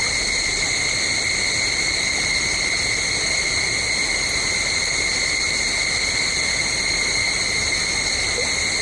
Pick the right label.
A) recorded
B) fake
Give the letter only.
A